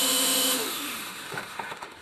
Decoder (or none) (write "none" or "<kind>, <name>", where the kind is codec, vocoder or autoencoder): autoencoder, DAC-VAE